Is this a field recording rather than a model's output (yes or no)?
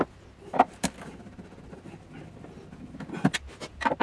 yes